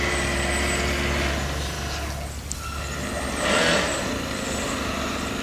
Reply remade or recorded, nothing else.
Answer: recorded